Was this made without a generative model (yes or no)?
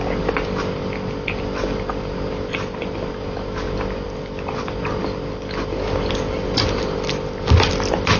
yes